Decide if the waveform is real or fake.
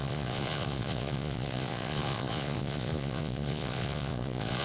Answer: fake